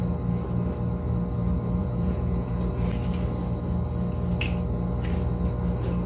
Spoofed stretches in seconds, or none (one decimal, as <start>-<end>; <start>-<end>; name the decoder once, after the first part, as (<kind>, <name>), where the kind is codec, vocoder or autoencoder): 1.8-2.5 (vocoder, Vocos)